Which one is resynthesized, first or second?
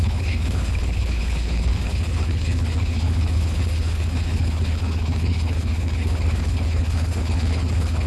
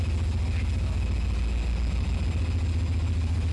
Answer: first